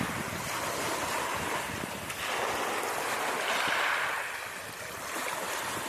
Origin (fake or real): real